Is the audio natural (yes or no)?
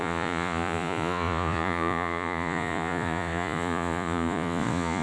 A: no